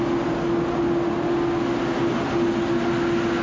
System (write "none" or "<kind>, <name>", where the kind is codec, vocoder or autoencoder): none